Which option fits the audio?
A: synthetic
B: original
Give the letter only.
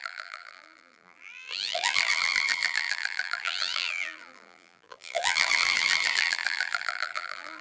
A